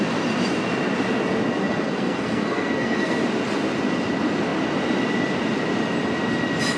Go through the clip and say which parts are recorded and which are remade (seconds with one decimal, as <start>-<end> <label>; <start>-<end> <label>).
0.0-1.6 recorded; 1.6-3.2 remade; 3.2-6.8 recorded